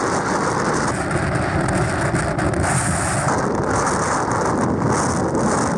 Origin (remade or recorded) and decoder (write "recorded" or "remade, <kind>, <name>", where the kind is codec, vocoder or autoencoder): recorded